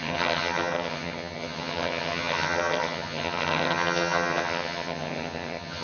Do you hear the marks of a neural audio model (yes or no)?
yes